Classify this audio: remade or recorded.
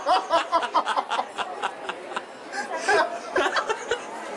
recorded